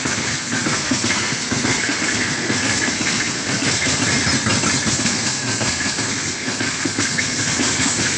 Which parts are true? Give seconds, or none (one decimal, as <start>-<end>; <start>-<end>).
4.0-4.9